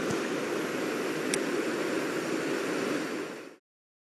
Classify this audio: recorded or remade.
recorded